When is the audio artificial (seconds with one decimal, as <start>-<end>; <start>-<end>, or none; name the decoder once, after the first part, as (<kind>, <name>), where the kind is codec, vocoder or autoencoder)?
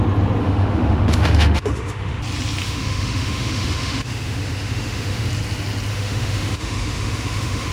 0.4-2.2 (autoencoder, DAC-VAE); 2.6-5.3; 5.9-7.7